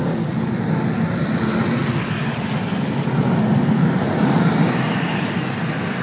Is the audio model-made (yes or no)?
no